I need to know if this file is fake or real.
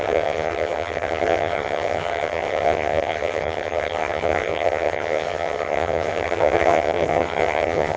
fake